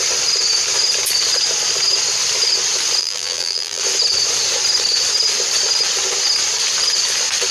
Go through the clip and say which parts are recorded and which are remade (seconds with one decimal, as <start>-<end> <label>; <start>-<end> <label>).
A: 0.0-3.0 recorded; 3.0-3.8 remade; 3.8-7.5 recorded